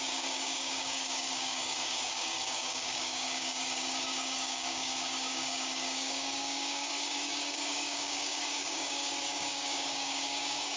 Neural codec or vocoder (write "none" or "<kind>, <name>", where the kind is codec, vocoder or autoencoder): codec, DAC